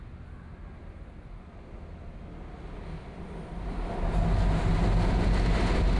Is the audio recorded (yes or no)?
yes